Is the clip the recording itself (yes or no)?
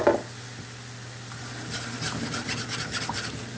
yes